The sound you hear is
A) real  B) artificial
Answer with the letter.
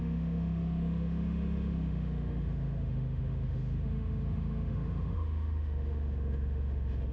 B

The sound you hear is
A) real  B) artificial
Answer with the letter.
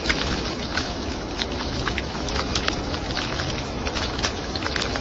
B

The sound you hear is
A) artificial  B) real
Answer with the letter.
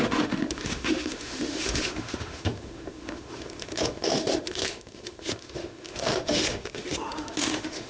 A